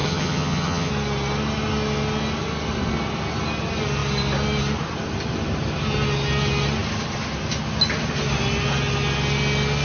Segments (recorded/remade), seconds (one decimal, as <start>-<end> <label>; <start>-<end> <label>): 0.0-0.9 remade; 0.9-9.8 recorded